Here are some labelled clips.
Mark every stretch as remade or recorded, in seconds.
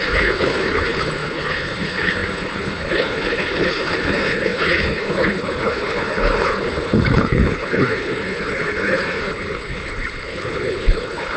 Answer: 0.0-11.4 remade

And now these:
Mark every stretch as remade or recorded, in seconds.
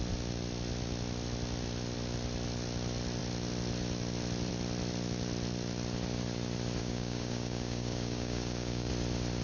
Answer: 0.0-6.8 recorded; 6.8-8.9 remade; 8.9-9.4 recorded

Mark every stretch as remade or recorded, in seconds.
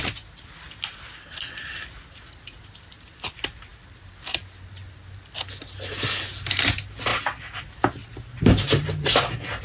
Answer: 0.0-9.6 recorded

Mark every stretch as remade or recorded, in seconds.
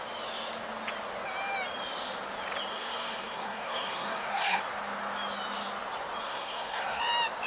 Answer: 0.0-2.7 recorded; 2.7-4.6 remade; 4.6-6.2 recorded; 6.2-7.0 remade; 7.0-7.5 recorded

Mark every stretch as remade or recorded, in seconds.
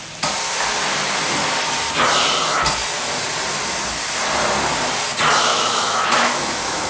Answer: 0.0-5.5 recorded; 5.5-6.9 remade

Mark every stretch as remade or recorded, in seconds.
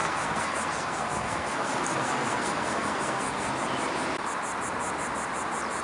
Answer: 0.0-3.5 remade; 3.5-5.8 recorded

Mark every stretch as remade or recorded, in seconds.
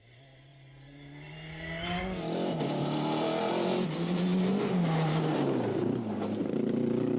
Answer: 0.0-7.2 recorded